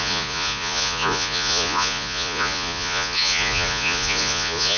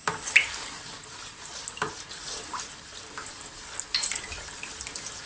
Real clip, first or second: second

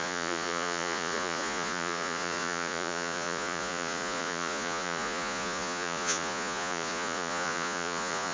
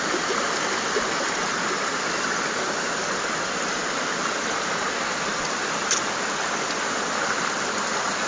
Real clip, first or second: second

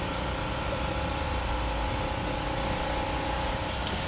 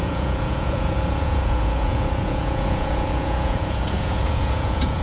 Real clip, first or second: first